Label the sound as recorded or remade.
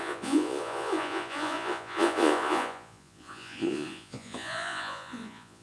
remade